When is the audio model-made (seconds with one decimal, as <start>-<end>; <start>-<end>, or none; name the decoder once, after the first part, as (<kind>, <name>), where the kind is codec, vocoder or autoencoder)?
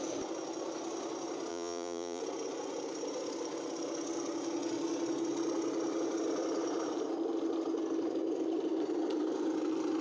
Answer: 1.5-2.2 (vocoder, Vocos)